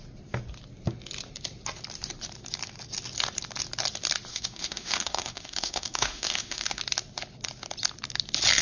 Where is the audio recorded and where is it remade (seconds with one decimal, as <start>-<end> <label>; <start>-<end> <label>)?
0.0-4.3 recorded; 4.3-6.8 remade; 6.8-8.6 recorded